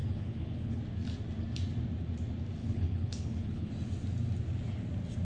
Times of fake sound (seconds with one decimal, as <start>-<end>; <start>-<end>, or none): 0.0-0.8; 2.6-3.7